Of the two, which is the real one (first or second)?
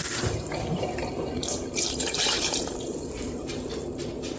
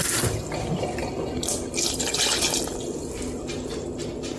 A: second